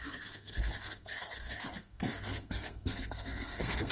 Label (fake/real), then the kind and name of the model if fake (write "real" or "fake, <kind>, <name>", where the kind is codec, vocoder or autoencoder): fake, codec, SNAC